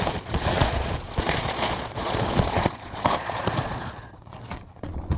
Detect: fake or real fake